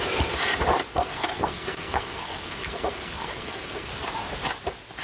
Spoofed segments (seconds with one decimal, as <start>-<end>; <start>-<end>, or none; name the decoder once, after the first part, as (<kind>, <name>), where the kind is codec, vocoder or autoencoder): 0.9-3.9 (codec, SNAC)